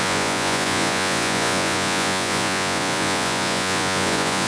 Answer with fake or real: fake